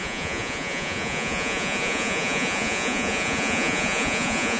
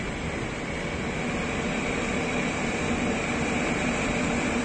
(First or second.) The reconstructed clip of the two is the first